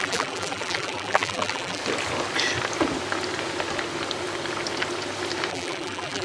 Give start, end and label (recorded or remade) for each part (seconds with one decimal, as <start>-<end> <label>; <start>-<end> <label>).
0.0-1.8 remade; 1.8-5.5 recorded; 5.5-6.2 remade